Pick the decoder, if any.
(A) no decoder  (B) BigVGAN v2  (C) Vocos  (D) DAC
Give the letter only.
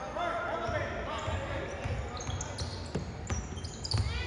A